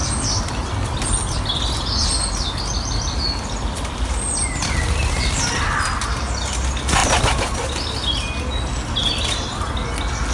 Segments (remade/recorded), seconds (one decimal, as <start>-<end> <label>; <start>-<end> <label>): 0.0-10.3 recorded